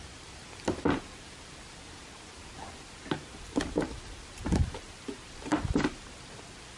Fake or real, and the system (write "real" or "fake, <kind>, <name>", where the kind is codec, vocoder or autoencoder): fake, vocoder, BigVGAN v2